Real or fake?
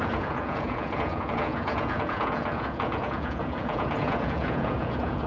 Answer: fake